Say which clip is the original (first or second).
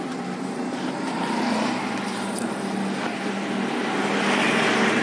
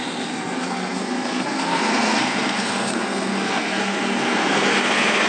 first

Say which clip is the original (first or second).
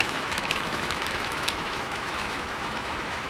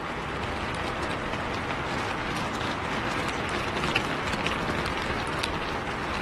second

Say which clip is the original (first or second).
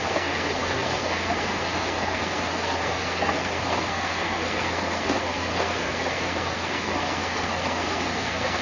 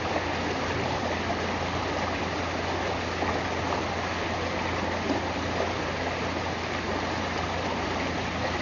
second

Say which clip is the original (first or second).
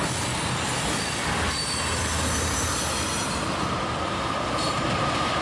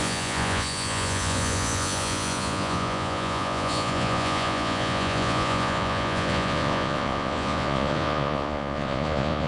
first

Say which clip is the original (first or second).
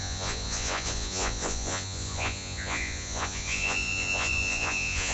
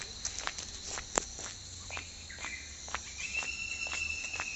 second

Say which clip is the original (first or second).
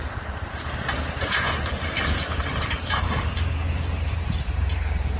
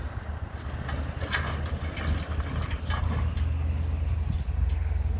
second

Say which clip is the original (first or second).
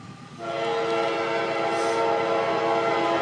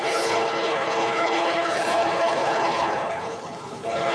first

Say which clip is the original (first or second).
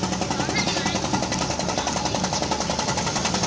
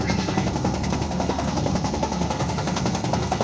first